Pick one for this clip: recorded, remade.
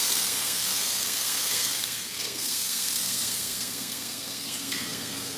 remade